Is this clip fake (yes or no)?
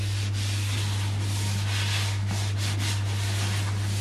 no